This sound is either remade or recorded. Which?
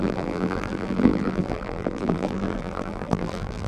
remade